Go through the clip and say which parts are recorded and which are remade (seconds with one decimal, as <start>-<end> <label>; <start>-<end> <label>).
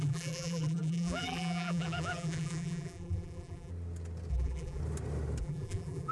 0.0-3.7 remade; 3.7-4.3 recorded; 4.3-4.8 remade; 4.8-5.4 recorded; 5.4-6.1 remade